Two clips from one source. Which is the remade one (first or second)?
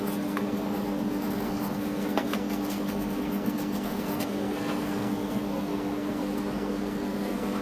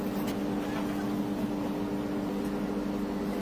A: first